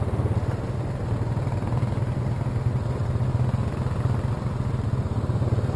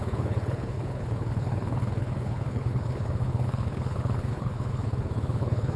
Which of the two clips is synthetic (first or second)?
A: second